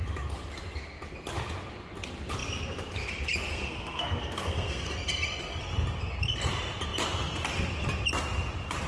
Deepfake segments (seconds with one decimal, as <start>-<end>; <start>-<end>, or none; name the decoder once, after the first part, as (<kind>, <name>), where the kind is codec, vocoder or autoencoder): 3.5-4.9 (codec, SNAC)